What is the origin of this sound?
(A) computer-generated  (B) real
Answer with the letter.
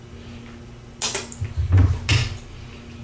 B